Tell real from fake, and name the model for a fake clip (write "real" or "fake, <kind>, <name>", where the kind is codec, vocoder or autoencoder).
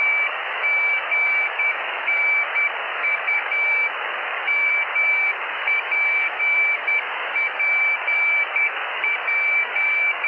fake, codec, DAC